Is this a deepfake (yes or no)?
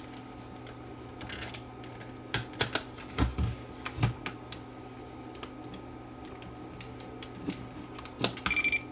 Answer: no